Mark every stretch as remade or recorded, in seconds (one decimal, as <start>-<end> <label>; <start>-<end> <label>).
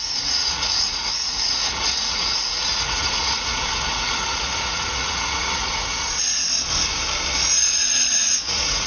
0.0-6.0 remade; 6.0-8.1 recorded; 8.1-8.9 remade